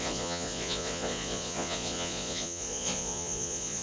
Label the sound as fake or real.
fake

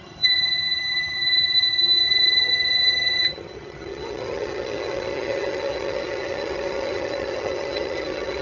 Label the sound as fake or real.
fake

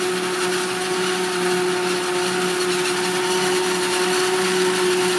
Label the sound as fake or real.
real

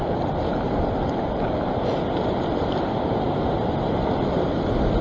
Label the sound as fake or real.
real